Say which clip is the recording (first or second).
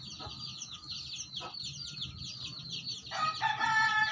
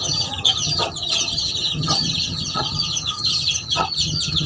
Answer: first